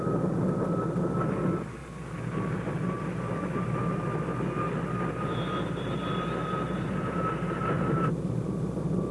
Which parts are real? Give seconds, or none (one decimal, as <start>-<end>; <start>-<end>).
0.0-6.4; 8.5-9.1